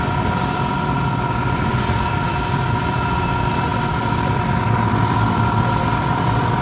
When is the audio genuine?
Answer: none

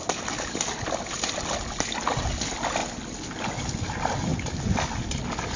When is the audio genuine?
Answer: 0.0-5.6

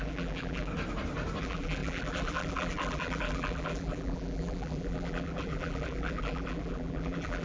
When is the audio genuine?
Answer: 0.7-1.4

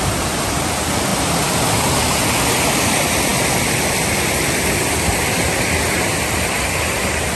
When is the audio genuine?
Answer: 0.0-7.3